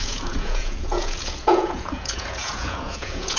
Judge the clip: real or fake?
fake